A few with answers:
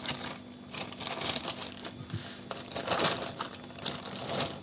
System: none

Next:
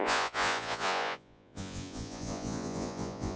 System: vocoder, Vocos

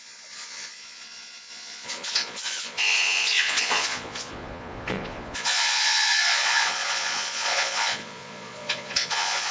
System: vocoder, Vocos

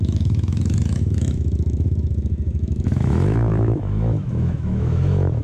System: autoencoder, DAC-VAE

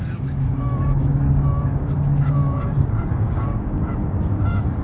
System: codec, DAC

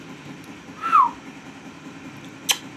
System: none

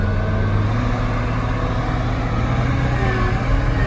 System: none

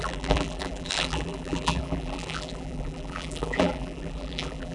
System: vocoder, BigVGAN v2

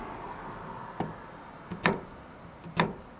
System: none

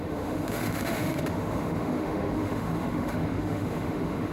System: autoencoder, DAC-VAE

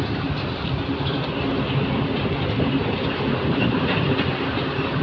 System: none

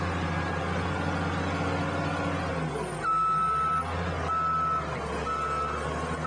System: none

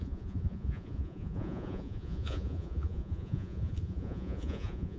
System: vocoder, Vocos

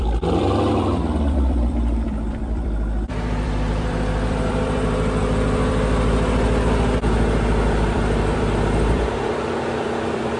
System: vocoder, BigVGAN v2